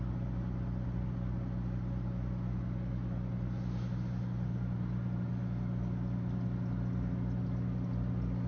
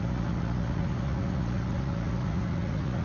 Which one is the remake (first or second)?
second